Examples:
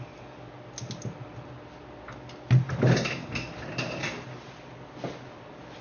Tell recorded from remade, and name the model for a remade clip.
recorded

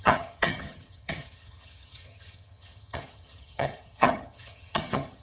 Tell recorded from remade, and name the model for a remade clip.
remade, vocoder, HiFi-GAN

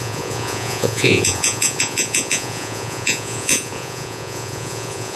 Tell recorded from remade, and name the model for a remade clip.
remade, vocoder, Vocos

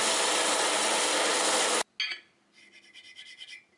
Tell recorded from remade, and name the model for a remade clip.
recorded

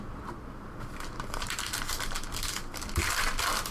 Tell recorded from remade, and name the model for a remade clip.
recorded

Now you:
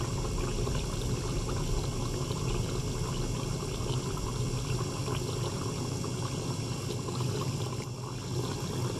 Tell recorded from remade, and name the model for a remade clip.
recorded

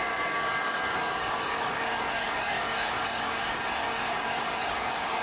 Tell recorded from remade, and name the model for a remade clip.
remade, codec, DAC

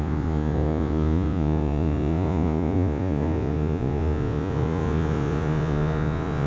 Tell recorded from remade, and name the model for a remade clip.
remade, vocoder, Vocos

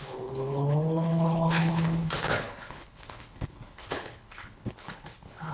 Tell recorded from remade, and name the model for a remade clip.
remade, codec, HILCodec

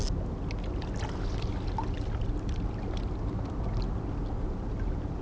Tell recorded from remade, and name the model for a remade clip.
recorded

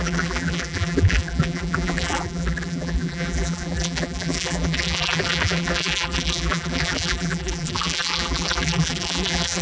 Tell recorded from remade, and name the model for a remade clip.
remade, vocoder, BigVGAN v2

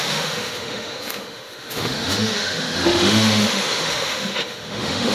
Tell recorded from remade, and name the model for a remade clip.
remade, autoencoder, DAC-VAE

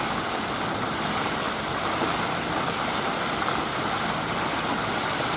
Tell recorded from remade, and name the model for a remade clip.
recorded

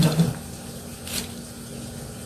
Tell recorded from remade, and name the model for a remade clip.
recorded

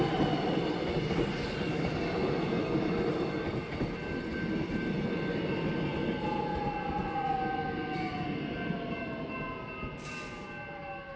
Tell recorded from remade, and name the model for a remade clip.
recorded